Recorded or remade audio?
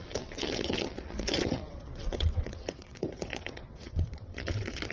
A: remade